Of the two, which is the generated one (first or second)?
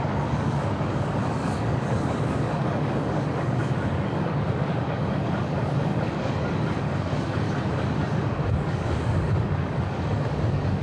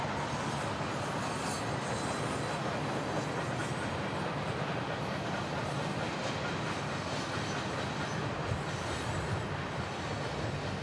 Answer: first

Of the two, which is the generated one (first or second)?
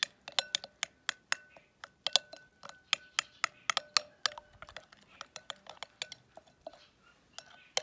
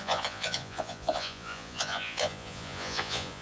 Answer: second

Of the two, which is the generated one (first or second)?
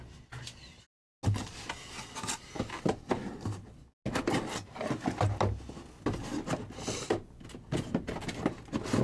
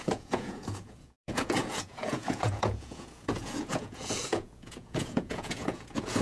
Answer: second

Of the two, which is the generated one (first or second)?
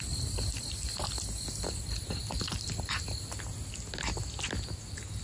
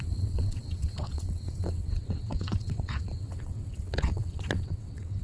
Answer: second